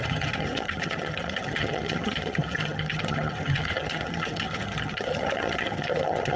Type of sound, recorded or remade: remade